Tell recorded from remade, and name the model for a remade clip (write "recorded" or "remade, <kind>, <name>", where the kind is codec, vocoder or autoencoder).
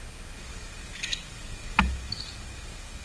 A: remade, codec, DAC